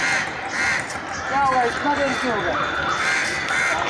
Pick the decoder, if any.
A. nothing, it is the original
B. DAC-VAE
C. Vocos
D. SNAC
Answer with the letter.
A